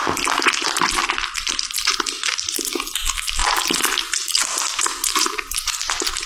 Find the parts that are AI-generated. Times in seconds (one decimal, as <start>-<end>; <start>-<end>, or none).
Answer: none